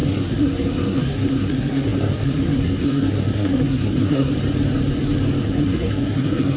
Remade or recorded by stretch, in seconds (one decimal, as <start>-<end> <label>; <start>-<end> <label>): 0.0-4.3 remade; 4.3-5.4 recorded; 5.4-6.6 remade